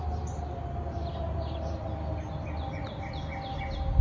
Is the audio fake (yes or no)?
no